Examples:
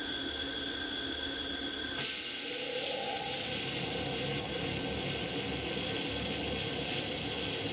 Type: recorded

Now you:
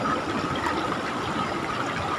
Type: recorded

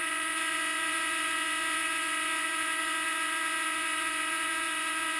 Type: remade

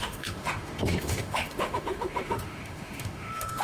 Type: remade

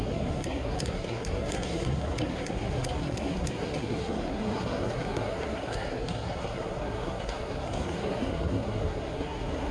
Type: remade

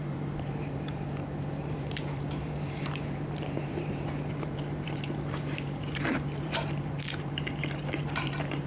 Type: remade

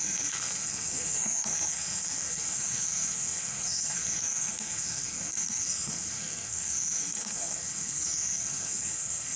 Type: remade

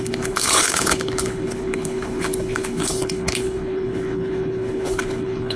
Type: remade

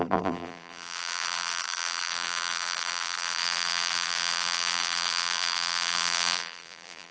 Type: remade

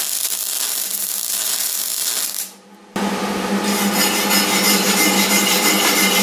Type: recorded